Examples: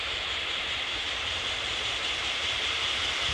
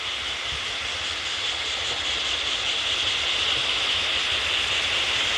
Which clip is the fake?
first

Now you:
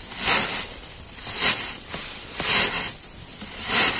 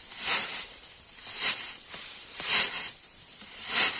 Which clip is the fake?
second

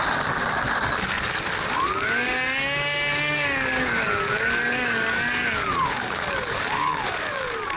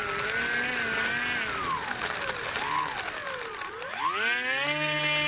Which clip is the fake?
first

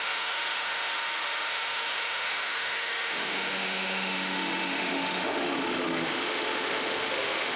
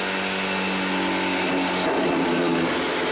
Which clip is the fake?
first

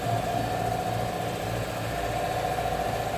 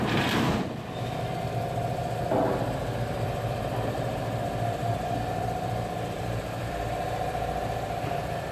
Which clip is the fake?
second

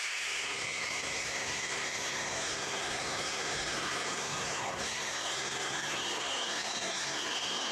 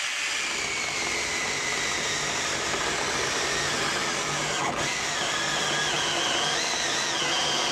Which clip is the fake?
first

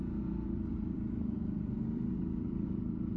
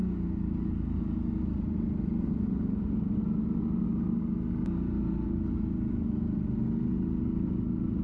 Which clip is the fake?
first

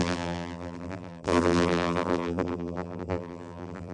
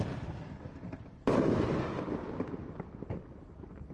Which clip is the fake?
first